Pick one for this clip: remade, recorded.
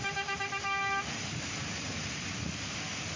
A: recorded